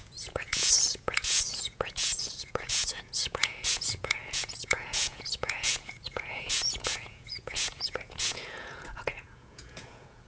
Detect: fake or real fake